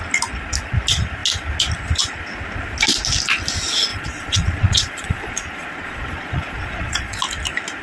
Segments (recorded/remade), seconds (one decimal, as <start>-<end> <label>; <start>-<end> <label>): 0.0-3.9 recorded; 3.9-7.2 remade; 7.2-7.8 recorded